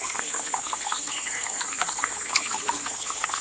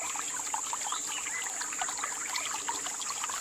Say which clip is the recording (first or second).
second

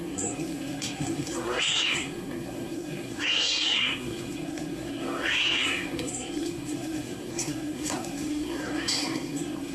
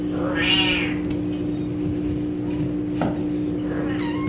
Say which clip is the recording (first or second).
second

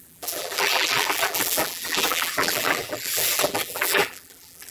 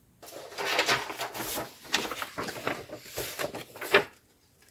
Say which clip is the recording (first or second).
second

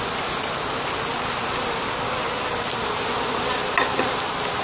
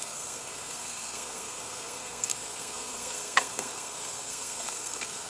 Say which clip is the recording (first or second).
first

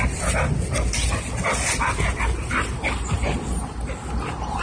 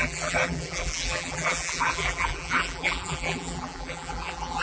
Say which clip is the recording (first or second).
first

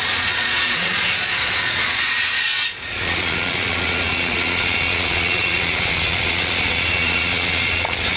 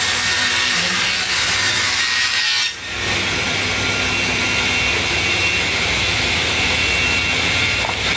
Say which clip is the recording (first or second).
second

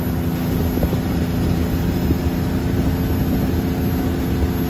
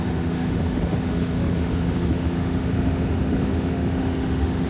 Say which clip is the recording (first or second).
first